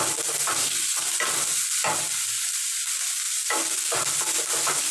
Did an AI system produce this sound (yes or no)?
no